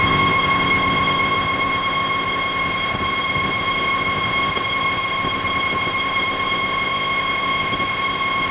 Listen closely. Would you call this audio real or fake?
fake